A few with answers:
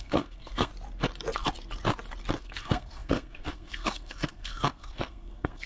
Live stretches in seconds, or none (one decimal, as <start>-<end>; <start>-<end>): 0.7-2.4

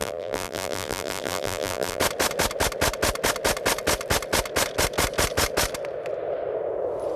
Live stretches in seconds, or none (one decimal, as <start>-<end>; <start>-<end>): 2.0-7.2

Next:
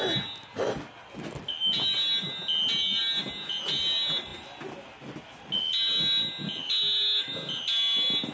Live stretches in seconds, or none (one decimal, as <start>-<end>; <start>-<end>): 0.0-6.6; 7.3-8.3

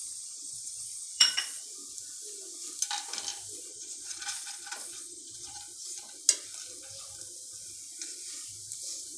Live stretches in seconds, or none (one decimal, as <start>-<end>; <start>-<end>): 1.6-3.7; 5.6-9.2

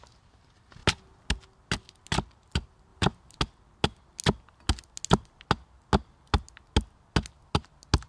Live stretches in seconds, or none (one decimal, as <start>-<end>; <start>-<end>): 0.0-8.1

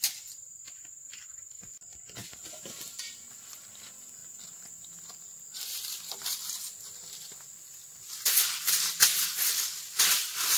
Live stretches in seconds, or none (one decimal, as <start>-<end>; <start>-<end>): 0.0-2.2; 2.8-10.6

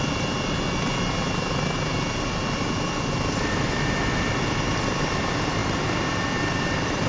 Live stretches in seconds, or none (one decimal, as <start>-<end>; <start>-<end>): 0.0-7.1